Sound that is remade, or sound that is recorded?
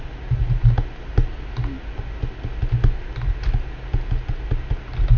recorded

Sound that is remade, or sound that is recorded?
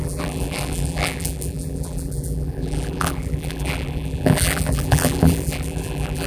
remade